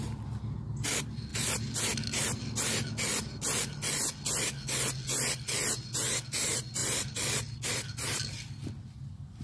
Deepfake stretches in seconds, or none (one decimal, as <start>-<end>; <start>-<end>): 1.3-1.8; 6.8-8.7

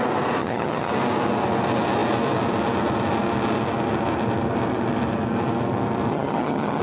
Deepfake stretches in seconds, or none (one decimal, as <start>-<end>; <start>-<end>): 0.4-0.9; 6.1-6.8

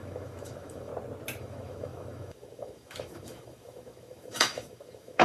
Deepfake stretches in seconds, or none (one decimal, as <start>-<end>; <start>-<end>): 0.0-0.9; 1.4-5.2

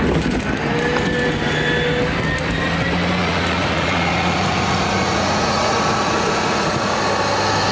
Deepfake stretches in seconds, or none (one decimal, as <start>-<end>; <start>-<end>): 3.2-7.0